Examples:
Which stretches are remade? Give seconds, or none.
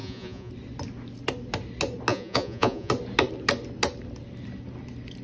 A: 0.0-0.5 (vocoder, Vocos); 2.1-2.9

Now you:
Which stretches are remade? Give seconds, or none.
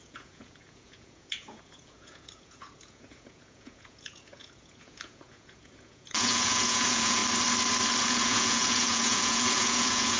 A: 0.0-7.2 (vocoder, Vocos); 8.0-10.2